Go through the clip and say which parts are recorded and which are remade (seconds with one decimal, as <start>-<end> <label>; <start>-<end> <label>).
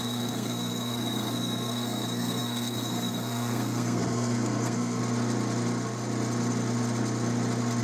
0.0-5.0 remade; 5.0-7.8 recorded